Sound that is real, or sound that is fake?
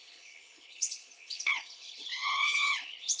fake